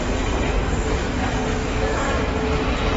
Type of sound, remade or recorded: recorded